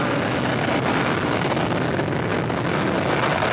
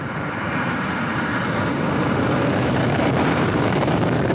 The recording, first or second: first